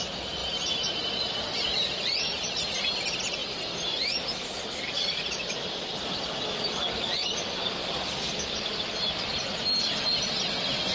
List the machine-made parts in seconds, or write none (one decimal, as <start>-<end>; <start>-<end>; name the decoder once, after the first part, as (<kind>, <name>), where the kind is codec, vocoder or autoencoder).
none